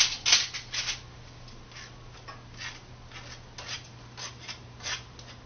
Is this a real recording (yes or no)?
yes